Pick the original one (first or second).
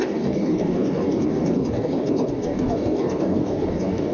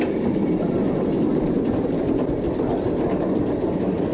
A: second